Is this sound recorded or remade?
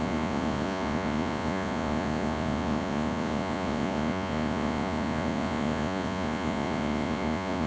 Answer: remade